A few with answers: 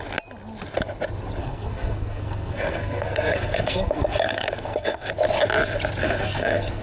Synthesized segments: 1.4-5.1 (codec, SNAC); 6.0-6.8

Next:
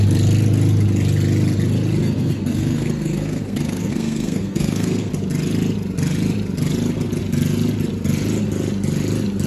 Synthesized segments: 2.0-5.1 (codec, SNAC)

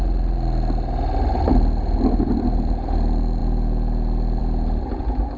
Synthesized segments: none

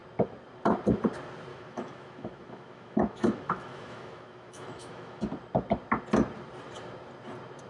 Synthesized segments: 1.5-5.2 (autoencoder, DAC-VAE)

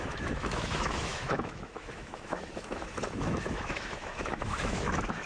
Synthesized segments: 0.0-5.3 (autoencoder, DAC-VAE)

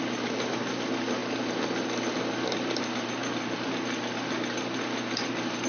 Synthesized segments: none